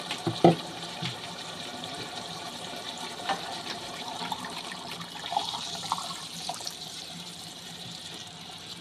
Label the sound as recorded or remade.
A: remade